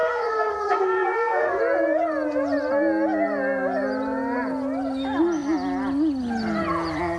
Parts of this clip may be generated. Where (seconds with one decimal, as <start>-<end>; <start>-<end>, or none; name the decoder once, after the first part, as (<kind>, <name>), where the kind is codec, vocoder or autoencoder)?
0.0-1.6 (codec, SNAC)